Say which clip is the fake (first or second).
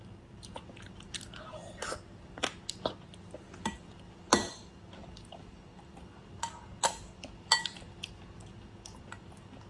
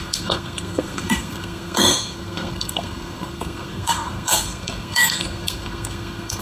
second